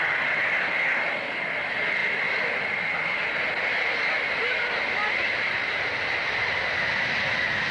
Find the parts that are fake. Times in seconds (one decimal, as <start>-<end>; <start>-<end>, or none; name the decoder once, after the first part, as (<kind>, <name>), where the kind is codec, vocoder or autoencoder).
none